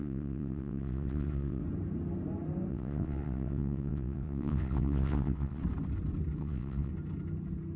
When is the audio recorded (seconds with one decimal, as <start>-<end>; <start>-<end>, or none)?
1.6-2.7; 5.6-6.4; 6.9-7.8